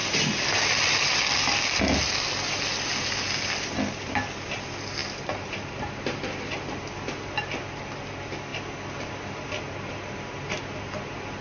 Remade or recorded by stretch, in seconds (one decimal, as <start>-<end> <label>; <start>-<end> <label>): 0.0-11.4 recorded